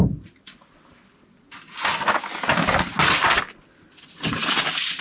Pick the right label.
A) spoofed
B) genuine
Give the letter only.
B